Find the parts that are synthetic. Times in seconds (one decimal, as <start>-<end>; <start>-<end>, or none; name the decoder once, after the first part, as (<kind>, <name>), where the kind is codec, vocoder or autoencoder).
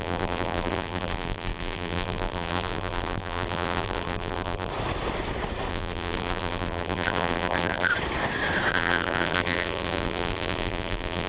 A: 0.0-4.7 (vocoder, BigVGAN v2); 5.7-7.9; 8.7-11.3